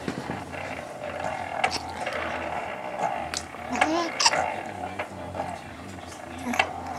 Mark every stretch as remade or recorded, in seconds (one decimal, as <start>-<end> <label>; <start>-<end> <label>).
0.0-1.5 remade; 1.5-5.7 recorded; 5.7-7.0 remade